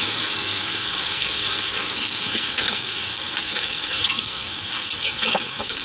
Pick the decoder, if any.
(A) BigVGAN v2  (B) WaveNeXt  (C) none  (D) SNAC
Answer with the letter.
D